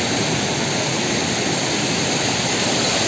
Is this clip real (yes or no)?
yes